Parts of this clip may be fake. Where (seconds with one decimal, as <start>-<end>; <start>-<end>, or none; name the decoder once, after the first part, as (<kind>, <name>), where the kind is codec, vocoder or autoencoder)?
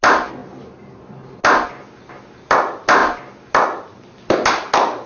none